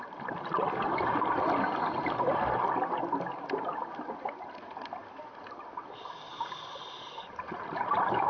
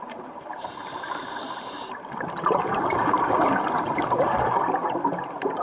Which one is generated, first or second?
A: second